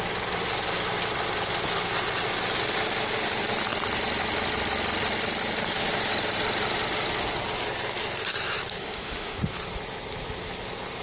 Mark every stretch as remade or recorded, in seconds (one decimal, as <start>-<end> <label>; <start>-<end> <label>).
0.0-8.8 recorded; 8.8-9.4 remade; 9.4-11.0 recorded